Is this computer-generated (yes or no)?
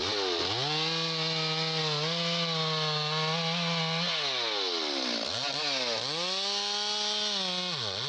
no